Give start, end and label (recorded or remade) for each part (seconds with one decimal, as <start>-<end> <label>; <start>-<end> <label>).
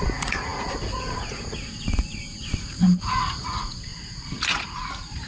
0.0-5.3 remade